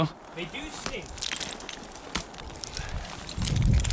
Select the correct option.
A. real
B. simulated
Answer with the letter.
A